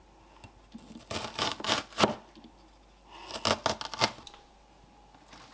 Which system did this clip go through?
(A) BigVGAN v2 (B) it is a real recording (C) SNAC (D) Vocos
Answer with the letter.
B